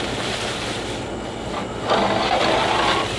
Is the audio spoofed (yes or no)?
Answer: no